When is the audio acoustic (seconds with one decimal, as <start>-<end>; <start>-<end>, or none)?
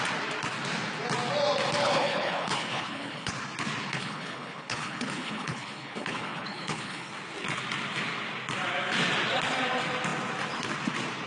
0.0-1.8; 3.3-3.9; 7.1-11.3